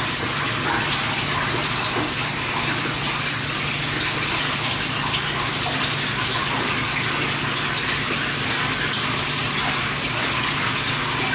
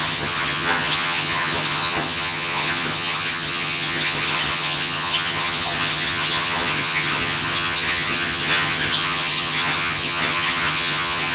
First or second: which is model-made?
second